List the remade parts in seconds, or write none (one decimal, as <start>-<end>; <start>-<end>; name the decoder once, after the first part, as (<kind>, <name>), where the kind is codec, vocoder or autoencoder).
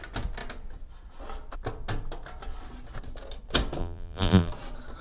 3.8-4.5 (vocoder, BigVGAN v2)